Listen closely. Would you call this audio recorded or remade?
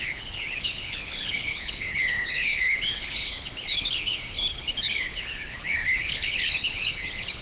remade